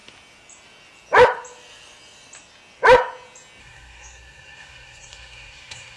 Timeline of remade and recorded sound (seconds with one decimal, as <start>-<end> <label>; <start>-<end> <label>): 0.0-3.6 recorded; 3.6-6.0 remade